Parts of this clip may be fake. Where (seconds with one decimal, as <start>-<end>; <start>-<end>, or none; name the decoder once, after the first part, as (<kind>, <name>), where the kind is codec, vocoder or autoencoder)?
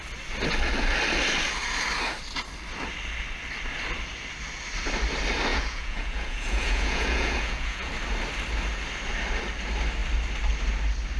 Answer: 5.5-7.9 (vocoder, Vocos)